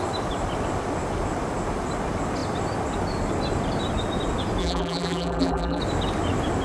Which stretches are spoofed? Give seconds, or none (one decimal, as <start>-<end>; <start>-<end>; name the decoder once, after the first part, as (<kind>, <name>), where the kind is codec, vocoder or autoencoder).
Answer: 4.6-5.8 (vocoder, BigVGAN v2)